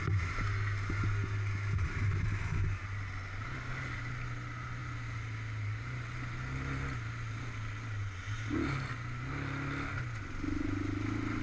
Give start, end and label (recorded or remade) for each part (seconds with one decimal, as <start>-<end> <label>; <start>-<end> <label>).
0.0-11.4 recorded